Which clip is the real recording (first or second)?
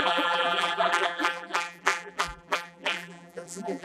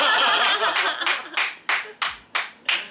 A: second